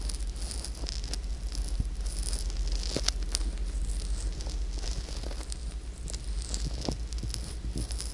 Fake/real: real